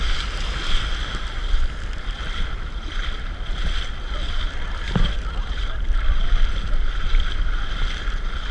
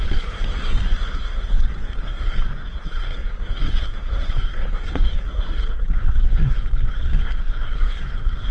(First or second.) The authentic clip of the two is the first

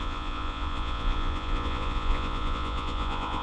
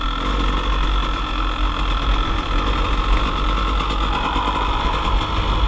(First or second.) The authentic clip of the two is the second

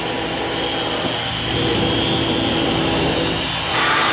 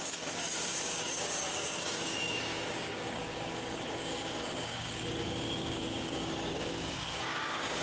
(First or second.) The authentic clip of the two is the first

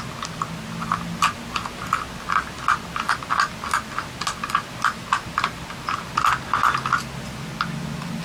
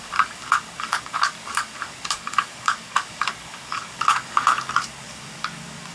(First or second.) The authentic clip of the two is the first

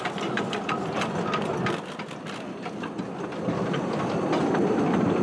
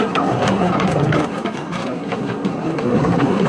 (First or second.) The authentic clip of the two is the first